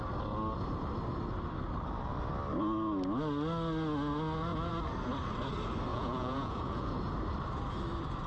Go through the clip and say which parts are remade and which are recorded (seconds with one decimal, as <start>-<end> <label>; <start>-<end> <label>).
0.0-5.9 recorded; 5.9-7.0 remade; 7.0-8.3 recorded

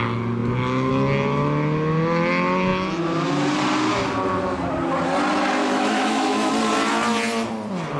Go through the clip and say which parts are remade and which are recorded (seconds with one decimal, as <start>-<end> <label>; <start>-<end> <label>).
0.0-5.6 recorded; 5.6-6.5 remade; 6.5-8.0 recorded

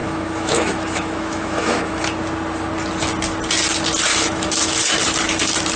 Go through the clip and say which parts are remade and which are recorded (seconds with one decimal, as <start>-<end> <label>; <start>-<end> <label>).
0.0-2.0 remade; 2.0-4.1 recorded; 4.1-4.9 remade; 4.9-5.8 recorded

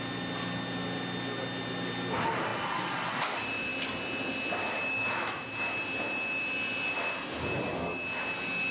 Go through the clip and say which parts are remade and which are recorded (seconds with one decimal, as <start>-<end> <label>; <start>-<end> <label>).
0.0-8.7 recorded

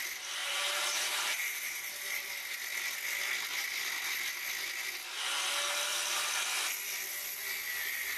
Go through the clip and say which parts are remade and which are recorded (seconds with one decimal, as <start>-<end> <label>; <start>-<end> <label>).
0.0-0.4 recorded; 0.4-1.8 remade; 1.8-8.2 recorded

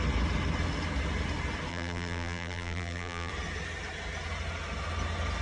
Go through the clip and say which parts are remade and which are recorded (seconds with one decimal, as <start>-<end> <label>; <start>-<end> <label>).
0.0-1.7 recorded; 1.7-3.3 remade; 3.3-5.4 recorded

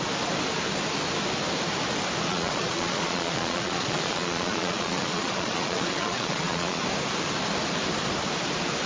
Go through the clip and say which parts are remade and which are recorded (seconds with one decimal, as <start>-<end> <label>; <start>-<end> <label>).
0.0-2.3 recorded; 2.3-6.8 remade; 6.8-8.9 recorded

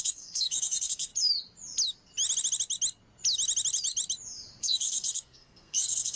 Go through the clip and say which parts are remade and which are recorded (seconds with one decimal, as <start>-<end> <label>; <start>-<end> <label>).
0.0-1.1 remade; 1.1-4.6 recorded; 4.6-6.2 remade